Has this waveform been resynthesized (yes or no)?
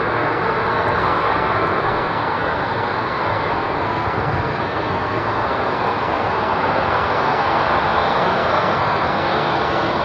yes